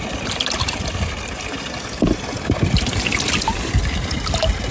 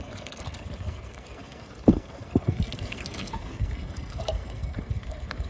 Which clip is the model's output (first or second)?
second